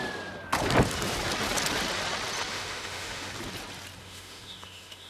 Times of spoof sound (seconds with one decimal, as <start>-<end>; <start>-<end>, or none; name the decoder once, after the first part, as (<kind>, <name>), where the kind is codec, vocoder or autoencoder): 2.5-3.3 (autoencoder, DAC-VAE); 4.0-5.1